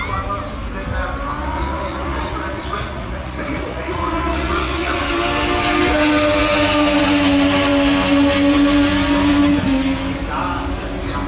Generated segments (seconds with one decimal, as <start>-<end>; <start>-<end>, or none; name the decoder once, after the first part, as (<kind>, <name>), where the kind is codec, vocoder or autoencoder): 1.4-5.1 (vocoder, Vocos)